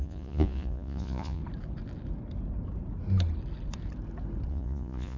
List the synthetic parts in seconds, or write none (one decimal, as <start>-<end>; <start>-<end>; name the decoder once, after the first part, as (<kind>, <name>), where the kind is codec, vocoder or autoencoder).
0.0-1.4 (vocoder, Vocos); 4.5-5.2